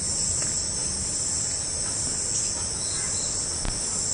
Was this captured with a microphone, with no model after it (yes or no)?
yes